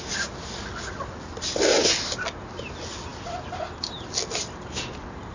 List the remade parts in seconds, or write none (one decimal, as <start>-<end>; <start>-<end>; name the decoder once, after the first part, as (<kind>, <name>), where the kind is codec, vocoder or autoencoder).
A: none